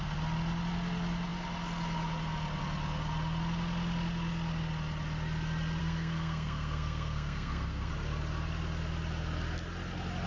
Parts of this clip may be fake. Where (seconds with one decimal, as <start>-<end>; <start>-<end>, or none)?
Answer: 5.8-7.9